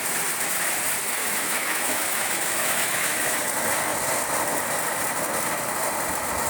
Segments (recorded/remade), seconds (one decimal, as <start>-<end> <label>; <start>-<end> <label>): 0.0-1.2 recorded; 1.2-3.4 remade; 3.4-6.5 recorded